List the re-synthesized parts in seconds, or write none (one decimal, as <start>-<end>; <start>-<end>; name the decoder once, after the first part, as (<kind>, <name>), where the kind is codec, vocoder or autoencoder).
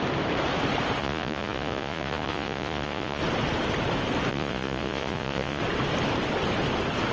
1.0-3.2 (vocoder, Vocos); 4.3-5.6